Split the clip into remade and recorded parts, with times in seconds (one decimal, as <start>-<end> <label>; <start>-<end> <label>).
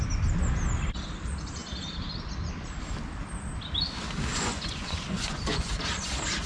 0.0-4.3 recorded; 4.3-5.7 remade; 5.7-6.5 recorded